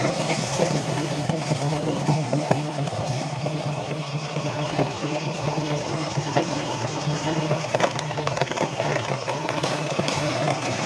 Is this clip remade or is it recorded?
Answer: remade